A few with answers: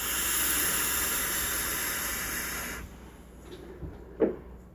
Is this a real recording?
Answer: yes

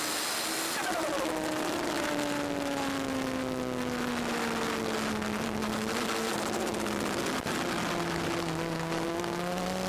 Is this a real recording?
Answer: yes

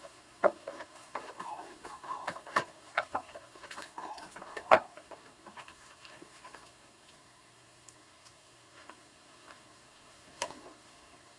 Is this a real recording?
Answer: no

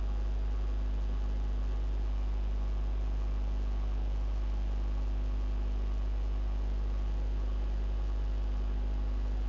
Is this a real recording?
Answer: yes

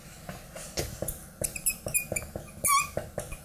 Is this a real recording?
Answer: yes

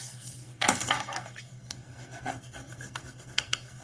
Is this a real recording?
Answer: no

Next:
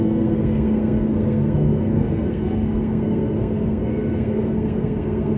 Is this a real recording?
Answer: no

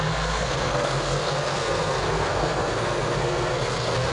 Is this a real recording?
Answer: no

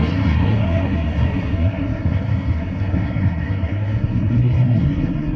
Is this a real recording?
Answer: no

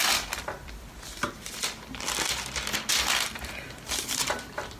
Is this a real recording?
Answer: yes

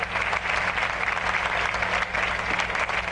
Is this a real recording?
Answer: yes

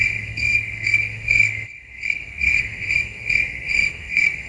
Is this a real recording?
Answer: no